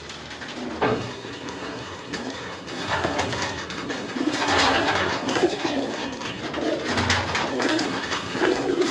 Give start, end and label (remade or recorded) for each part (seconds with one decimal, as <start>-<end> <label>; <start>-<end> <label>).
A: 0.0-0.8 recorded; 0.8-6.4 remade; 6.4-7.5 recorded; 7.5-8.9 remade